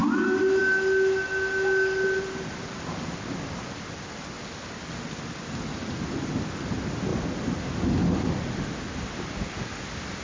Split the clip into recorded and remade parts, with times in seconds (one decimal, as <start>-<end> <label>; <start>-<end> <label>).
0.0-10.2 recorded